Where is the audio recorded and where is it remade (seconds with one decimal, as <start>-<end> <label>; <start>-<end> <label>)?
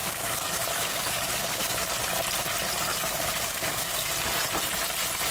0.0-1.8 remade; 1.8-2.9 recorded; 2.9-4.1 remade; 4.1-5.3 recorded